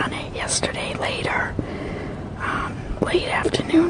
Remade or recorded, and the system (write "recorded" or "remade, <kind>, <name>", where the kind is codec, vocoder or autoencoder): recorded